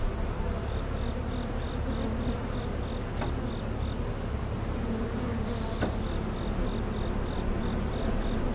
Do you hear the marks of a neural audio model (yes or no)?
no